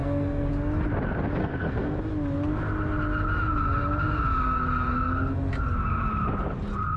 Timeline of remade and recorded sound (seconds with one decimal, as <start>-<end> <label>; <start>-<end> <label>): 0.0-0.5 remade; 0.5-1.4 recorded; 1.4-2.0 remade; 2.0-7.0 recorded